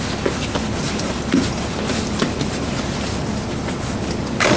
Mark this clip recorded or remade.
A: remade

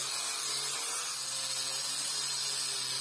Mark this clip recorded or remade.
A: recorded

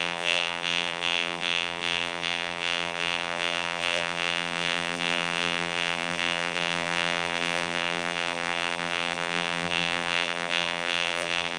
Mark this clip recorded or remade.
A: remade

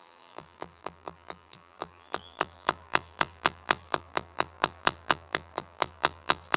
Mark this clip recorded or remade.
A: remade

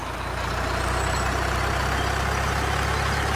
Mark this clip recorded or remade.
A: recorded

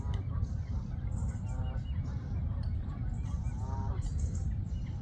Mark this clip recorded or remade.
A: remade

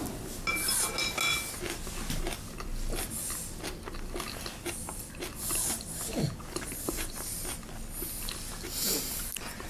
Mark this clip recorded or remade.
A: recorded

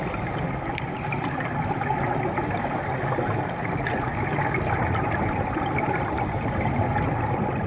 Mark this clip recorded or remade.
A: recorded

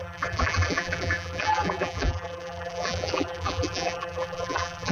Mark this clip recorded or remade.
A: remade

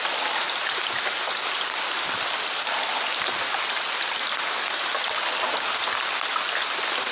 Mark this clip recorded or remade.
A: recorded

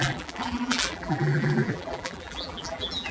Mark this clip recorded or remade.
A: remade